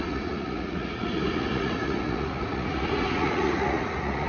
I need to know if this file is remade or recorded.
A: remade